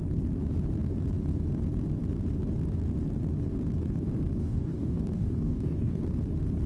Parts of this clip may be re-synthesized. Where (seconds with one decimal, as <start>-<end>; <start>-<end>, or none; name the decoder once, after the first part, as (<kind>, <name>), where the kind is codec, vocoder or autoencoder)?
4.4-6.0 (codec, DAC)